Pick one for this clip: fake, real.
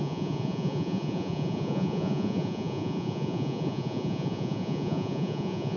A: fake